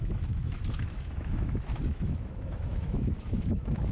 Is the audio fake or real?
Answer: fake